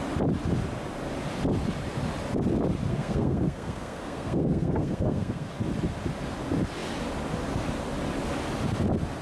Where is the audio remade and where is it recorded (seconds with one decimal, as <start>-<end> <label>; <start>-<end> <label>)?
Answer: 0.0-2.9 recorded; 2.9-5.5 remade; 5.5-9.2 recorded